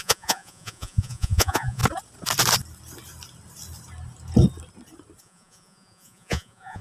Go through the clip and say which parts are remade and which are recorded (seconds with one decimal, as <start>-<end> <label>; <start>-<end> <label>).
0.0-1.8 remade; 1.8-5.2 recorded; 5.2-6.8 remade